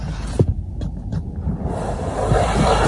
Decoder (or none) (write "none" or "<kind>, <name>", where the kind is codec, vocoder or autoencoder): vocoder, BigVGAN v2